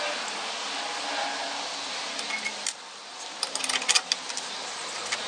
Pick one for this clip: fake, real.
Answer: real